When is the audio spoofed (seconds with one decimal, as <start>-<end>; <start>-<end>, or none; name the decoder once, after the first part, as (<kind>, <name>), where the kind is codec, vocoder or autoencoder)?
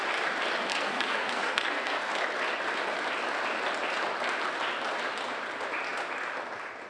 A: 0.7-2.1 (codec, SNAC)